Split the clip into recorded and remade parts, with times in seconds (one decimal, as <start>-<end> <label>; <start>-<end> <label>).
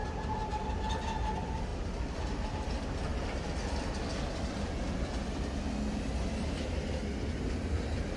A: 0.0-1.7 recorded; 1.7-2.2 remade; 2.2-8.2 recorded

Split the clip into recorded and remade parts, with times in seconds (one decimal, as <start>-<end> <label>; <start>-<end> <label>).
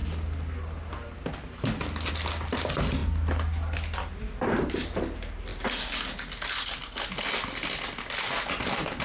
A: 0.0-9.0 recorded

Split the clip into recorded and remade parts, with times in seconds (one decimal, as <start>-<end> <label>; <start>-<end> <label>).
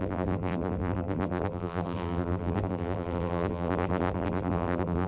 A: 0.0-5.1 remade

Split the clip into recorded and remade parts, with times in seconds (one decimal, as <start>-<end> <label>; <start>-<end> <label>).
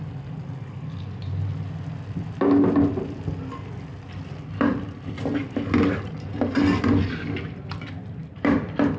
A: 0.0-8.2 recorded; 8.2-9.0 remade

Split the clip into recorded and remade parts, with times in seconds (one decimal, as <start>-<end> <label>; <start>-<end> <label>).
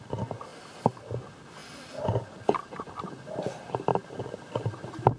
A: 0.0-5.2 recorded